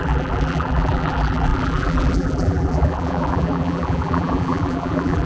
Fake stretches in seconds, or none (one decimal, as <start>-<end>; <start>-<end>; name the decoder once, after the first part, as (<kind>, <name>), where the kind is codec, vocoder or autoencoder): 0.0-5.3 (vocoder, BigVGAN v2)